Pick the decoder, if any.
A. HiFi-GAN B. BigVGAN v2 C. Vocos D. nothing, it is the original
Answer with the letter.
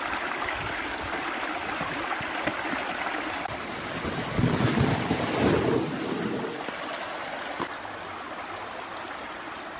D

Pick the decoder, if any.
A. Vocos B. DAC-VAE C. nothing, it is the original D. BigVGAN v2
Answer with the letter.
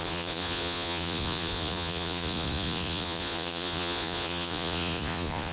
A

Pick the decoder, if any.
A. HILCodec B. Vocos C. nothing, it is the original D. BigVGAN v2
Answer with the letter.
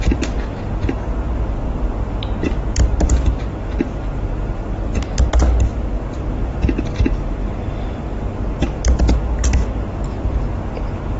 C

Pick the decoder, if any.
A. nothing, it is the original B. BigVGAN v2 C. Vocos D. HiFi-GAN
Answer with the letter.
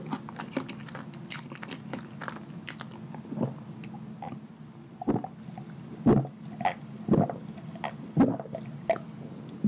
A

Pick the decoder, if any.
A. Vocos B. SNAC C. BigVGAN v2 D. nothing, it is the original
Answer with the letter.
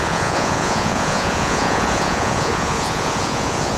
A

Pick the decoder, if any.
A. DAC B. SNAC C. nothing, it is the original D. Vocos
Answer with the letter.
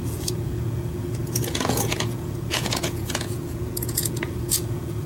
D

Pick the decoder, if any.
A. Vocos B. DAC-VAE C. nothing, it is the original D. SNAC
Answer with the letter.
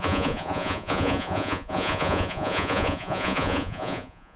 A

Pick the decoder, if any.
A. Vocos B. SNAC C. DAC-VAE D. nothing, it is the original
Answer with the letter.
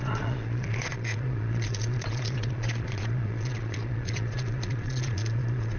A